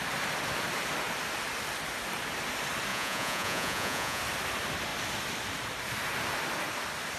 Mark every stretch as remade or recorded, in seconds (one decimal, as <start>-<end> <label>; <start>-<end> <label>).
0.0-2.9 recorded; 2.9-4.2 remade; 4.2-7.2 recorded